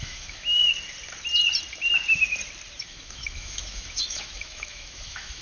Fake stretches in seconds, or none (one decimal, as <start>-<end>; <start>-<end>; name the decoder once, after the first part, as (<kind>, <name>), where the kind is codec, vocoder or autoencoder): 0.0-0.6 (autoencoder, DAC-VAE); 2.8-5.4